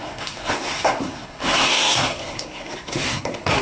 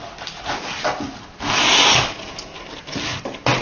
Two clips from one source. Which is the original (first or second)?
second